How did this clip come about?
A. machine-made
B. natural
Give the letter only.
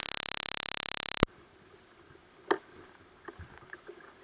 B